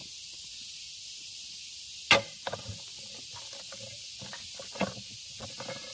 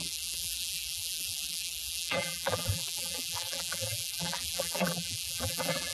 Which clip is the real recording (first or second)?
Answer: first